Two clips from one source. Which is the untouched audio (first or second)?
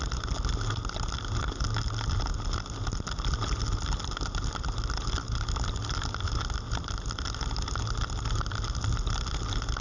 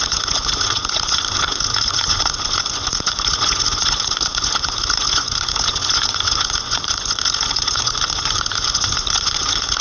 first